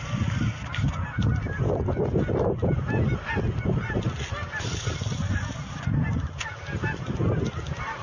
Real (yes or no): yes